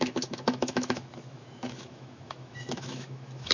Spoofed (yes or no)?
yes